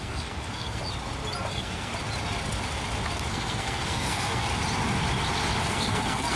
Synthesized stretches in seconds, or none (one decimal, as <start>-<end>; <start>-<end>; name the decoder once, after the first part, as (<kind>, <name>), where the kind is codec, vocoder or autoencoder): 0.0-0.8 (codec, SNAC); 1.5-1.9; 3.3-4.5; 5.6-6.4